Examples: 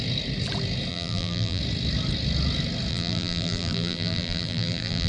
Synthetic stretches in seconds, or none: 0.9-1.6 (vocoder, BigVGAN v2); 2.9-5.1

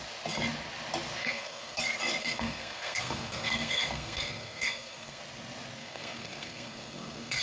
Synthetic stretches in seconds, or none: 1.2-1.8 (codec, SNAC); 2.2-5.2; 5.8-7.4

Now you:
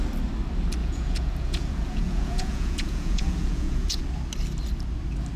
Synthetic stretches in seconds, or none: 0.8-4.0 (vocoder, Vocos)